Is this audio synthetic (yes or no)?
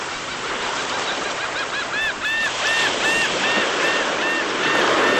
no